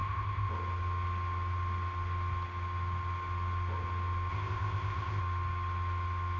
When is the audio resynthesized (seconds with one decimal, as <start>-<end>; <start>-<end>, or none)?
0.0-0.5; 4.3-5.2